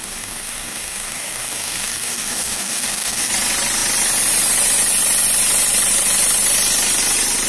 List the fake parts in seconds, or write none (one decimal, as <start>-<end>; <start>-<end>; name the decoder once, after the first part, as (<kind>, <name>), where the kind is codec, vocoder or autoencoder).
0.0-3.3 (codec, DAC)